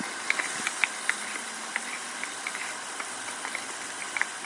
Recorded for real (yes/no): no